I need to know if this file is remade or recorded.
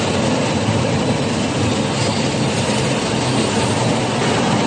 recorded